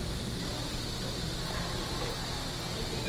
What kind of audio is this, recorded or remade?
recorded